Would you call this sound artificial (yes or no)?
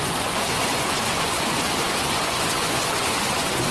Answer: yes